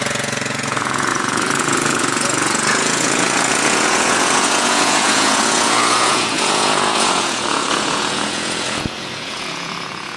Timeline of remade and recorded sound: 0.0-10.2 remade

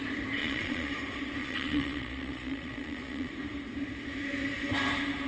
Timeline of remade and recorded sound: 0.0-0.4 recorded; 0.4-0.9 remade; 0.9-1.4 recorded; 1.4-3.3 remade; 3.3-5.3 recorded

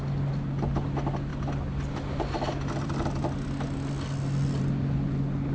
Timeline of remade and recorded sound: 0.0-5.5 recorded